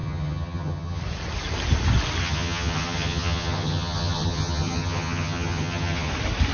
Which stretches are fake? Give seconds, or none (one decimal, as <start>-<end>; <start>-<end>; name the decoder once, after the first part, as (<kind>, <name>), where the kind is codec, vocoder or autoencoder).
0.0-1.0 (vocoder, HiFi-GAN); 2.2-6.1